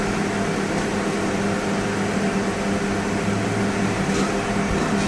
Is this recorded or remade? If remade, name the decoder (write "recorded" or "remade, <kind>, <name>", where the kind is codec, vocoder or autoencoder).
recorded